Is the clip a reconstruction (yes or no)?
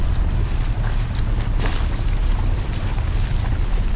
yes